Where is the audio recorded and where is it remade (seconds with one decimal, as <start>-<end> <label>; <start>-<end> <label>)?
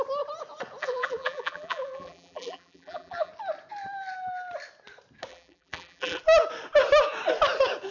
0.0-0.8 recorded; 0.8-3.3 remade; 3.3-5.3 recorded; 5.3-6.2 remade; 6.2-7.9 recorded